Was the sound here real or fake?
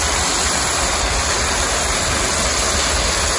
real